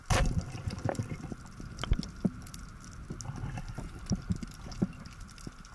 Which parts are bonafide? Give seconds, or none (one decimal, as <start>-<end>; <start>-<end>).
0.0-0.8; 1.4-5.7